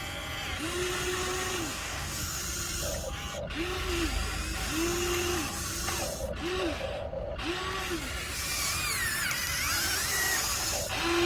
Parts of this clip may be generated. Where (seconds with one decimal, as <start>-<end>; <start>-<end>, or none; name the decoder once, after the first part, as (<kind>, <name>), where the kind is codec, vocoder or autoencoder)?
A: 1.6-2.4 (codec, DAC)